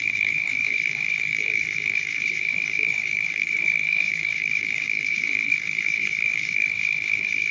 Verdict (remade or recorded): remade